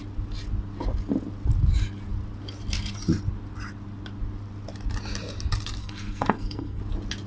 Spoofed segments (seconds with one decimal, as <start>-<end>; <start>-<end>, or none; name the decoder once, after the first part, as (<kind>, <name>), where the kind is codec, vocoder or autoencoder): 5.8-6.8 (codec, SNAC)